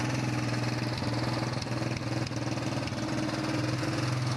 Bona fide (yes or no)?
yes